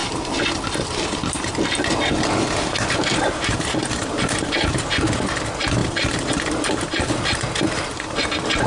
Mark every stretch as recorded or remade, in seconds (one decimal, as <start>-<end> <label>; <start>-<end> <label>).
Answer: 0.0-4.8 remade; 4.8-5.8 recorded; 5.8-7.9 remade; 7.9-8.7 recorded